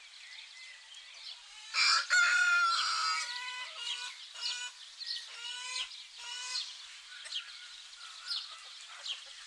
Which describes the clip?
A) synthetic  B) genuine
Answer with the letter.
B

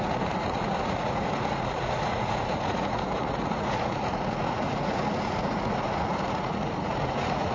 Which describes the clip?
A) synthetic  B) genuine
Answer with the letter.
A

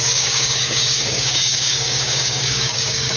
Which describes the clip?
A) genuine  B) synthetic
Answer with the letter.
B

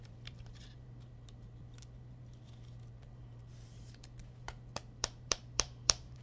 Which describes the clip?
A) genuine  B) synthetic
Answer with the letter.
B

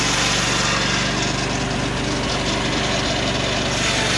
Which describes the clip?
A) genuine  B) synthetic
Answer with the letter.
A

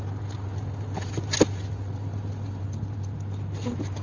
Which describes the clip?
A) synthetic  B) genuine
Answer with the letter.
B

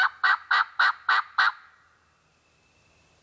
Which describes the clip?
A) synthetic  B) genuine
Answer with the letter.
A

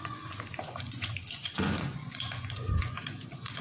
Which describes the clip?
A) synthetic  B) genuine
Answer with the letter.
A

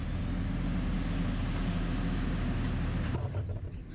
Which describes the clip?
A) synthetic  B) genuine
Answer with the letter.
B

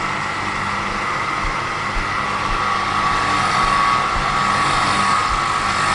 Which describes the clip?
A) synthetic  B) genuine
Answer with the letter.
B